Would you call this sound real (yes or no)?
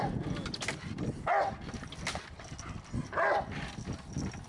yes